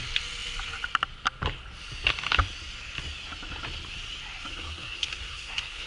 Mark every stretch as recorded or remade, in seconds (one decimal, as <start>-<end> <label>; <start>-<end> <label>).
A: 0.0-4.5 recorded; 4.5-5.9 remade